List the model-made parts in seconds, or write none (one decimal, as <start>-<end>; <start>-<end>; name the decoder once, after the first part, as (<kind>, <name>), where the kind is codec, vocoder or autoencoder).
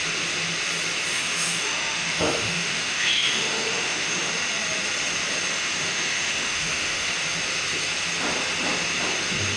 1.1-4.3 (autoencoder, DAC-VAE); 5.5-7.1